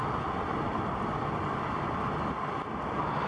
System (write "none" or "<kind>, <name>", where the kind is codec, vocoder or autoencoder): none